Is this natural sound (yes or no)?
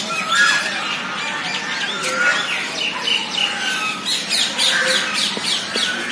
yes